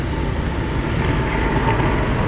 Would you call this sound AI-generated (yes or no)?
no